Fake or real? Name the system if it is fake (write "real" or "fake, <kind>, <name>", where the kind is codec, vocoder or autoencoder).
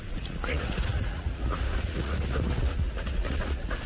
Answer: fake, vocoder, Vocos